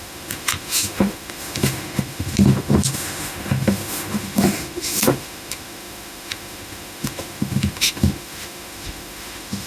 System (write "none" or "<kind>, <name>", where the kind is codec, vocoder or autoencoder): autoencoder, DAC-VAE